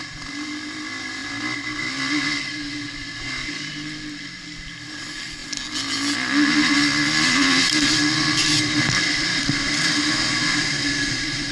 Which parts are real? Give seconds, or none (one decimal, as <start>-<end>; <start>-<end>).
1.2-1.8; 5.4-7.6